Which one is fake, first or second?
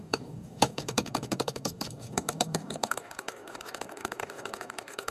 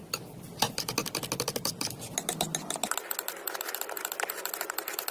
first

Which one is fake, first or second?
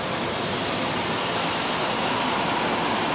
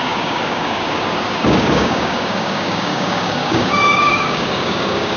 second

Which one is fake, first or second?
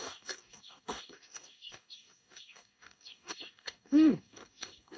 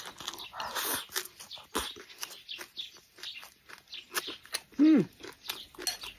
first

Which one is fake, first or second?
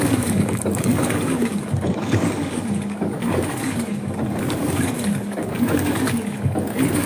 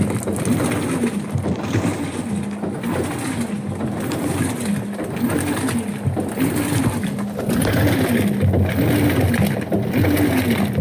first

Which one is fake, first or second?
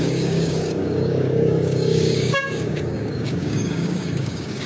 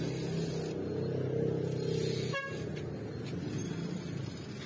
first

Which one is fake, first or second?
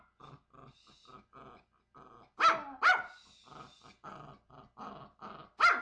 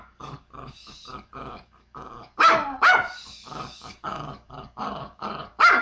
second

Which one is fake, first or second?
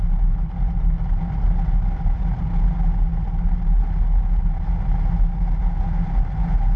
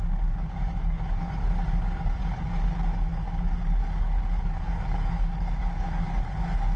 second